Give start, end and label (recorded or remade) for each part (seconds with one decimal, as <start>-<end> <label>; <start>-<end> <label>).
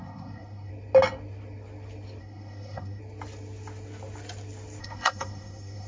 0.0-0.7 remade; 0.7-2.2 recorded; 2.2-3.0 remade; 3.0-4.8 recorded; 4.8-5.9 remade